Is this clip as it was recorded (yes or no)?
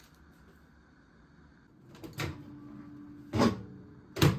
yes